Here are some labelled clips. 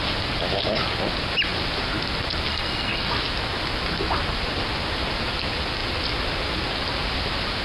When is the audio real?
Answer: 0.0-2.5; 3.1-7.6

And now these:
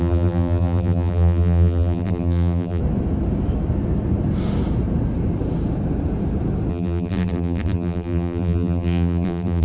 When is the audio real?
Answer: 2.8-6.7

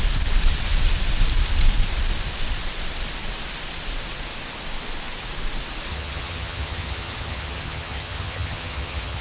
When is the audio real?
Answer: 0.0-5.9

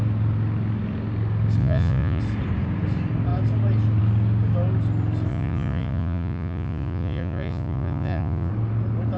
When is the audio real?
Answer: 0.0-1.6; 2.2-5.3; 8.5-9.2

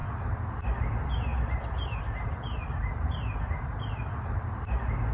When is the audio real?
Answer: 0.0-0.8